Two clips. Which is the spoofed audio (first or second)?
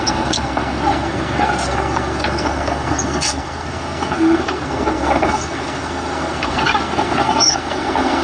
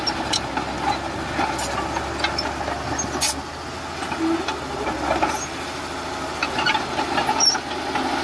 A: first